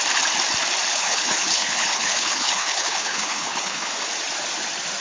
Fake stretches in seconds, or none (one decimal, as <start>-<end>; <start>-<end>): 0.9-3.9